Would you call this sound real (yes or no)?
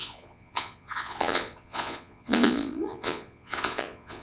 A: no